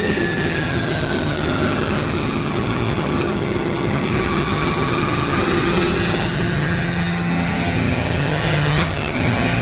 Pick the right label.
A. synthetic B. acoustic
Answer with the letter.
A